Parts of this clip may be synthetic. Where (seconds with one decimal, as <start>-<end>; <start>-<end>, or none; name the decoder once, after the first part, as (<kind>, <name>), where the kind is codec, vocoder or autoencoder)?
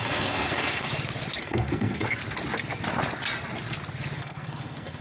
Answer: 0.0-0.9 (codec, SNAC); 1.4-2.2; 4.2-5.0